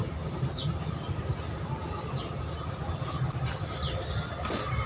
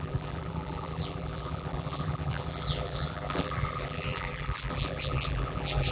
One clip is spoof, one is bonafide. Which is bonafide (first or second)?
first